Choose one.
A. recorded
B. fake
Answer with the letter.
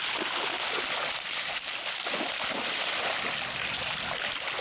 A